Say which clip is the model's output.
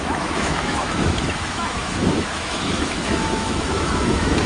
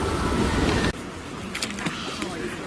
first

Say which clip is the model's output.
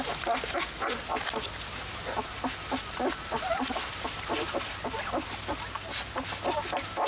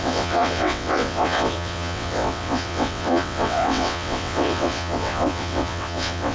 second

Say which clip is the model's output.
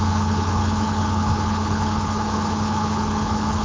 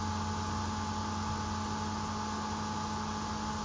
first